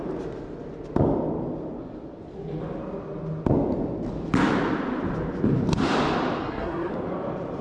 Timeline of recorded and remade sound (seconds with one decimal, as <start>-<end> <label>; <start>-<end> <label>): 0.0-6.4 recorded; 6.4-6.9 remade; 6.9-7.6 recorded